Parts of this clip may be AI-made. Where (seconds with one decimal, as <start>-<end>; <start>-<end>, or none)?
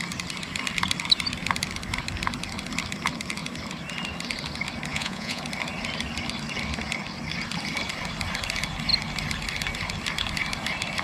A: 4.9-5.4